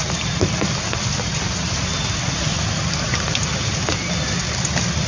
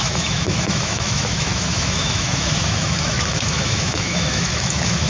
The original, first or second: first